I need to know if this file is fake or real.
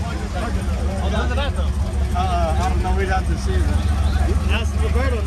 real